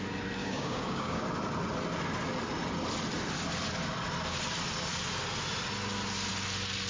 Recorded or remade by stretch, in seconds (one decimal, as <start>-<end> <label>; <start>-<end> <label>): 0.0-0.4 recorded; 0.4-1.2 remade; 1.2-6.9 recorded